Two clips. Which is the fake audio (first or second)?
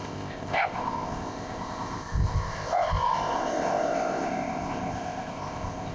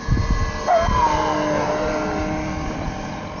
first